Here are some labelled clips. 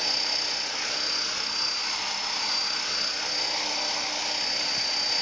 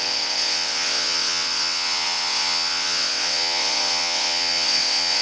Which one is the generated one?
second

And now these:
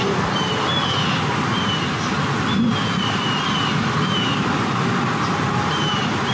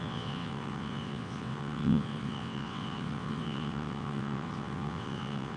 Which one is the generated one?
second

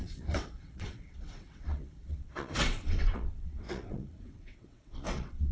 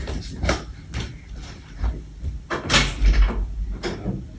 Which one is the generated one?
first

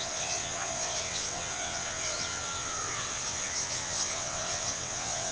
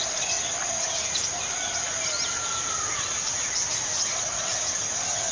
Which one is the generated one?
first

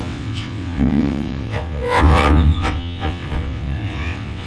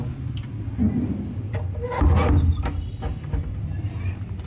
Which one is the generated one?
first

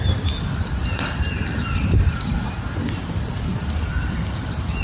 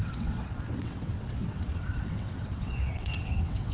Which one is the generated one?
second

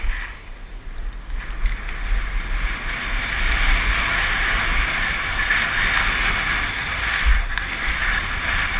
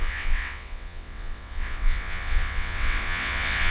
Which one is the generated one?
second